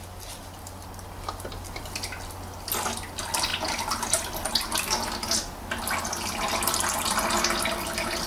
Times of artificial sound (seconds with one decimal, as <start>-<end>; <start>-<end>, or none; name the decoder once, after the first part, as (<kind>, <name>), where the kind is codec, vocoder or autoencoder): none